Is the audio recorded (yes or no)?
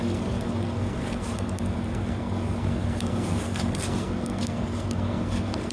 no